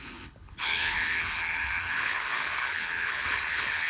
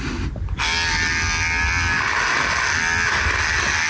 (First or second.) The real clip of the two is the second